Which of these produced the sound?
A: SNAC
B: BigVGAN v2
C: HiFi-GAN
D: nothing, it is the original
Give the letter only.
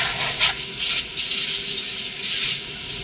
D